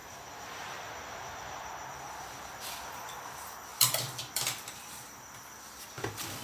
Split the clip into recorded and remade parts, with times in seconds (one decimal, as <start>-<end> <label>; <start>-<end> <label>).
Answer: 0.0-2.6 remade; 2.6-3.7 recorded; 3.7-5.6 remade; 5.6-6.4 recorded